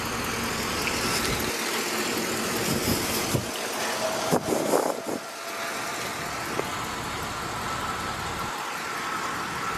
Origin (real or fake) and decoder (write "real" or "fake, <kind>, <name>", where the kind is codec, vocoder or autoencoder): real